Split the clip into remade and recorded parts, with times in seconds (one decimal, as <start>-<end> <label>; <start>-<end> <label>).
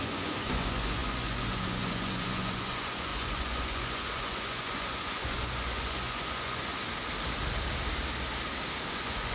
0.0-6.7 remade; 6.7-8.9 recorded; 8.9-9.3 remade